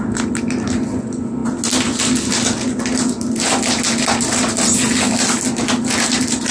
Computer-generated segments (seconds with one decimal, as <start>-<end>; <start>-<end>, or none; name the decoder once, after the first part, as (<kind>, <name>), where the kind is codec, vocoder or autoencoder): none